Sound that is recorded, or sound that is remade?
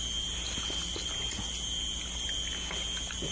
recorded